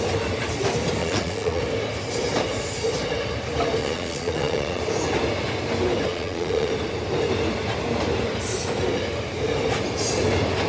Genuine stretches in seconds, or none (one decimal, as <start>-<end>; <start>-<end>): 0.0-1.0; 1.6-3.8; 4.8-6.1; 6.7-10.7